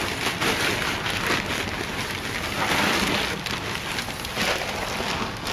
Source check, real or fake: real